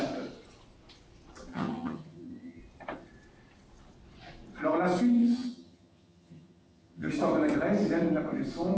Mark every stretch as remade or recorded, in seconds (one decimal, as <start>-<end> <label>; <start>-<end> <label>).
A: 0.0-1.5 recorded; 1.5-2.6 remade; 2.6-5.2 recorded; 5.2-7.1 remade; 7.1-8.8 recorded